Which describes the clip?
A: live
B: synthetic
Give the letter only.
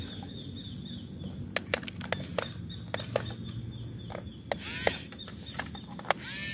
A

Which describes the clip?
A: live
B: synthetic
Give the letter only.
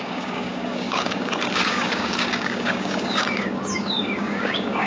B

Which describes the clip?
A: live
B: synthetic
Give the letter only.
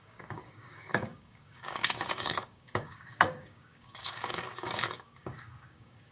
B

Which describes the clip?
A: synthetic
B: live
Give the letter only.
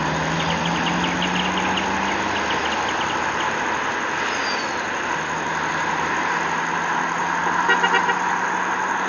B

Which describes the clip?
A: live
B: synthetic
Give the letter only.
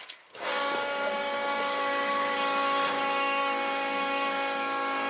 B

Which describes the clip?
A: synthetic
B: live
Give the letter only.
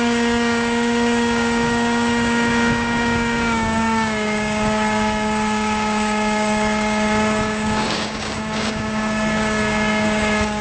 A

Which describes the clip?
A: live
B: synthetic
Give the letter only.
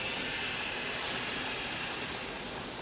A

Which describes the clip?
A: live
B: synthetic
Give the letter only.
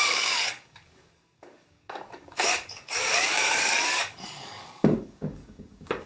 B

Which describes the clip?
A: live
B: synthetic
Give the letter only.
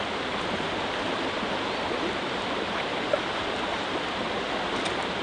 A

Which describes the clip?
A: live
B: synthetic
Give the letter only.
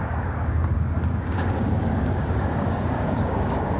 B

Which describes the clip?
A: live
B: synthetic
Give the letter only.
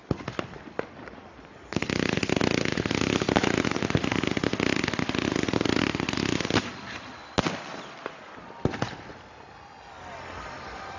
A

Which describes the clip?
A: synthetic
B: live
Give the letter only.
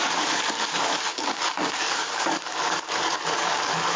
A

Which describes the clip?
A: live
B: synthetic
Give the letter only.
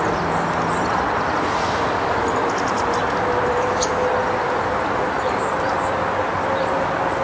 A